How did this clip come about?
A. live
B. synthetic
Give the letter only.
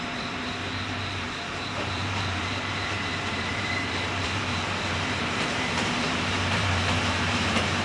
B